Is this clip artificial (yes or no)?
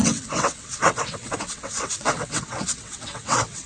yes